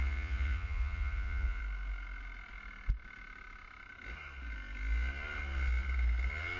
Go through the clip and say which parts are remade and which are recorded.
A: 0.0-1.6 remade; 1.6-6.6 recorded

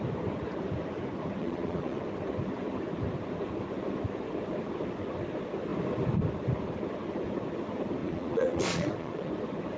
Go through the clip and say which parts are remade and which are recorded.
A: 0.0-1.4 recorded; 1.4-2.0 remade; 2.0-8.0 recorded; 8.0-9.3 remade; 9.3-9.8 recorded